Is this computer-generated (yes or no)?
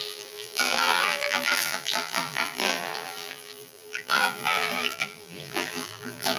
yes